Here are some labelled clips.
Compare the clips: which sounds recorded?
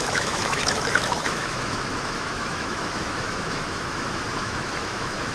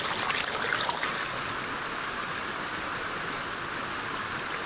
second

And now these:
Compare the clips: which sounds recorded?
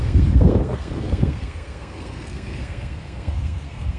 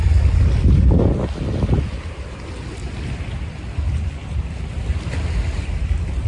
second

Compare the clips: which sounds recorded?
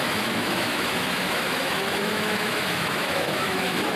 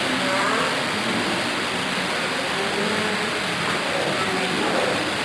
second